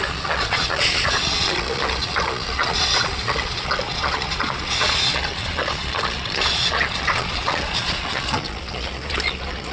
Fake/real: fake